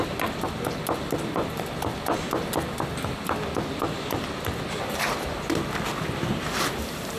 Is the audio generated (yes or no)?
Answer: no